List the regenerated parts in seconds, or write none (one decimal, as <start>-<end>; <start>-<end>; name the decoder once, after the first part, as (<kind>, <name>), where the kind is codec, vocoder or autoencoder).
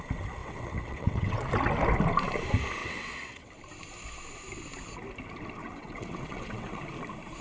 0.4-1.5 (vocoder, WaveNeXt); 2.8-3.5; 5.6-6.8